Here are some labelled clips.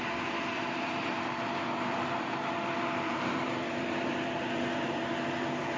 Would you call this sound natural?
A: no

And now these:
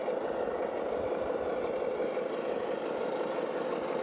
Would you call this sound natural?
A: yes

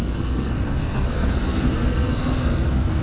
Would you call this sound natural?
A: no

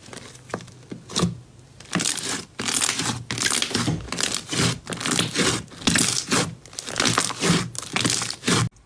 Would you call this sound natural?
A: yes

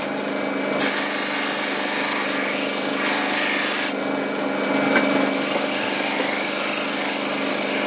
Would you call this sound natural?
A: yes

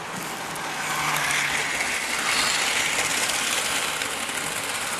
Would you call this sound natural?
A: yes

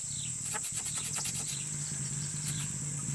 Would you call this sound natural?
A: yes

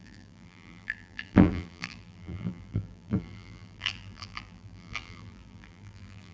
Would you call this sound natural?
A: no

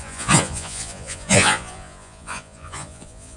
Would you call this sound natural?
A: no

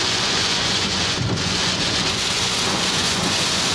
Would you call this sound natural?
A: no